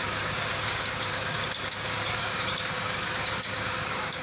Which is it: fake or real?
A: fake